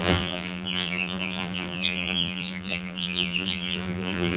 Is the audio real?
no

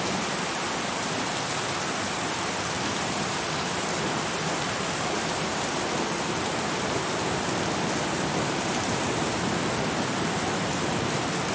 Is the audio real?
no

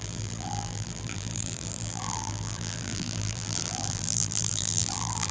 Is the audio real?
no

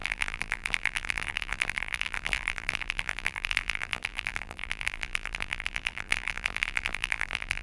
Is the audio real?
no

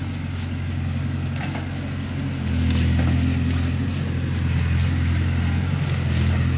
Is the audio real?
yes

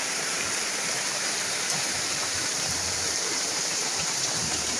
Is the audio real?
no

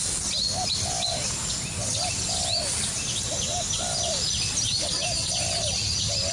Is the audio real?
yes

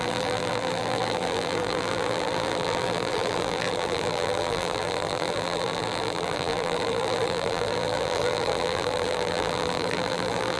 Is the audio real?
no